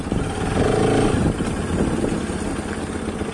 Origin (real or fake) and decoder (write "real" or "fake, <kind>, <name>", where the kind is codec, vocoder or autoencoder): real